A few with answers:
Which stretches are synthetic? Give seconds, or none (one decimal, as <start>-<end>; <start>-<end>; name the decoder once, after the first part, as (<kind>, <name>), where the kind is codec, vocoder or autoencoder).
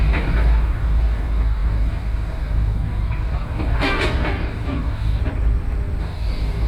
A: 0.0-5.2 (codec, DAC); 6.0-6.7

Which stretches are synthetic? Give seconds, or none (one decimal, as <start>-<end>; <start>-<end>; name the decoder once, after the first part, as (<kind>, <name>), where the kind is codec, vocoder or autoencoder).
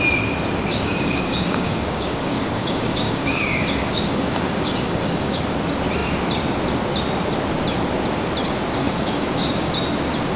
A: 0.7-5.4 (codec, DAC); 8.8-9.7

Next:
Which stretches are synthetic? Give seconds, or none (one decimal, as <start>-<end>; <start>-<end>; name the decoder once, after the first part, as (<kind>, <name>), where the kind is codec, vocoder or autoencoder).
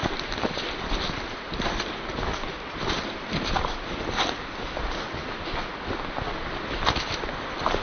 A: none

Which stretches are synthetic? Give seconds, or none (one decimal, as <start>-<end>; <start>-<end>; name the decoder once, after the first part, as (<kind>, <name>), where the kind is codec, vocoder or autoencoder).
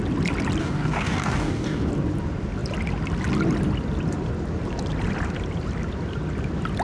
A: 0.6-1.9 (codec, DAC)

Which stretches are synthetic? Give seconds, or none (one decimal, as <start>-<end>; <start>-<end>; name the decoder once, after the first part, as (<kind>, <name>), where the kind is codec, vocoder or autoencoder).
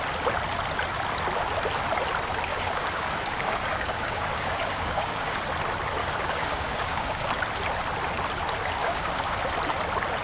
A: 2.5-5.4 (codec, DAC); 6.0-7.3; 8.8-9.4